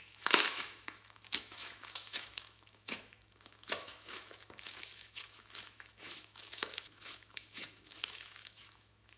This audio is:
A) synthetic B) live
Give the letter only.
A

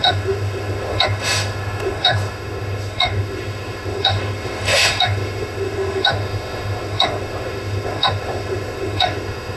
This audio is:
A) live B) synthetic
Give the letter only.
B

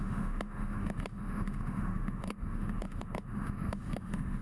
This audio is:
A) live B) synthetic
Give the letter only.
B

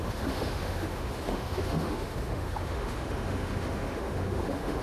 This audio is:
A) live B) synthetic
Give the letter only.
B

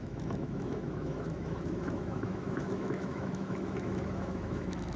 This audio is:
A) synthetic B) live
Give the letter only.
A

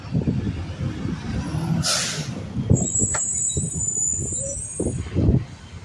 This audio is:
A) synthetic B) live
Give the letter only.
B